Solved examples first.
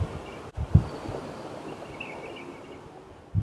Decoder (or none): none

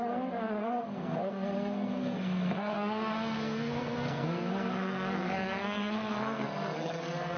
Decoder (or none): codec, SNAC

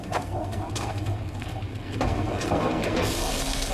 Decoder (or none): codec, SNAC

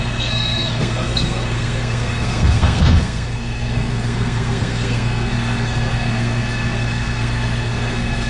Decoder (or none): codec, SNAC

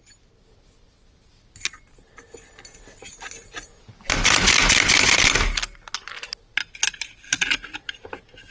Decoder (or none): none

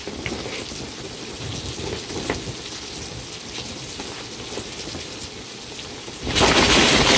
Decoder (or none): none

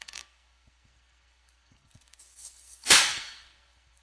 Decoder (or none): codec, SNAC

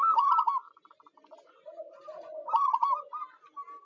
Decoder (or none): none